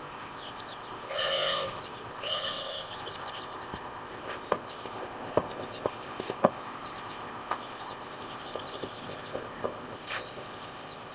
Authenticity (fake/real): fake